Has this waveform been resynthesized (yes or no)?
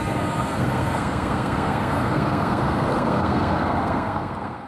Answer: yes